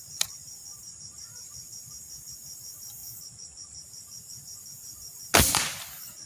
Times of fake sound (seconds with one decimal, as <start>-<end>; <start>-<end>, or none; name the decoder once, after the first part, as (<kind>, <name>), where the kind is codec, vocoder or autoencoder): none